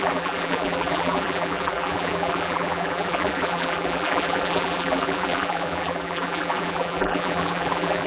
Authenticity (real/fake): fake